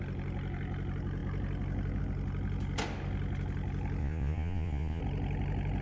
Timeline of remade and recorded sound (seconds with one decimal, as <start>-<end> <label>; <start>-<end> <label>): 0.0-4.0 recorded; 4.0-5.0 remade; 5.0-5.8 recorded